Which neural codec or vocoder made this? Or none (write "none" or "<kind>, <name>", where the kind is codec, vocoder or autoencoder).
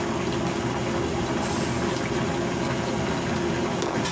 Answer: none